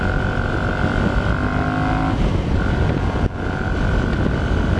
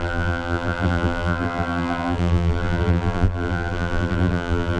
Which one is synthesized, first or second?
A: second